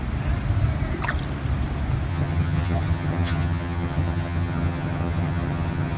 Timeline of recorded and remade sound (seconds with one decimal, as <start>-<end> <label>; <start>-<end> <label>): 0.0-2.1 recorded; 2.1-6.0 remade